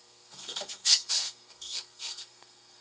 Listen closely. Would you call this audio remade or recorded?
remade